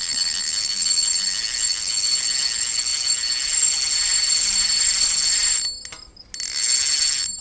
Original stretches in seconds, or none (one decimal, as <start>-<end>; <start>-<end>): 0.0-7.4